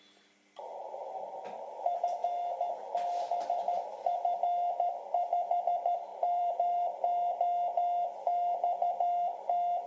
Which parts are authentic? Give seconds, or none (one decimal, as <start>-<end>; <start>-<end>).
0.0-6.1; 7.0-9.9